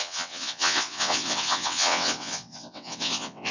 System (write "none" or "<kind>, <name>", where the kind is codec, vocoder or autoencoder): vocoder, WaveNeXt